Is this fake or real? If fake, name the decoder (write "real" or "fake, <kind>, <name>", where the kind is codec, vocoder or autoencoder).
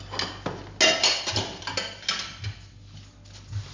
real